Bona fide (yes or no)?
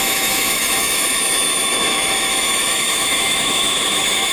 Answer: no